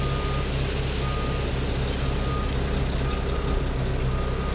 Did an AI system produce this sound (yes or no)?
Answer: no